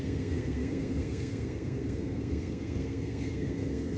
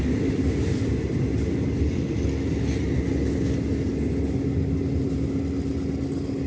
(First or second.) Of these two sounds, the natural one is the second